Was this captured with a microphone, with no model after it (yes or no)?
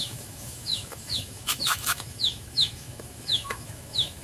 no